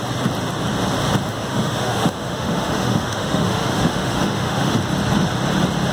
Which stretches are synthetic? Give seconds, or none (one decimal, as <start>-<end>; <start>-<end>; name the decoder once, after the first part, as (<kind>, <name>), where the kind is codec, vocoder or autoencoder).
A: 1.3-4.8 (autoencoder, DAC-VAE)